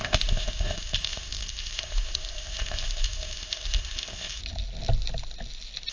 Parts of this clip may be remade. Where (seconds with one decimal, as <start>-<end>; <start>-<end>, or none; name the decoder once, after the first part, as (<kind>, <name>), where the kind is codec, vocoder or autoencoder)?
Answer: 0.0-4.4 (codec, ZipCodec)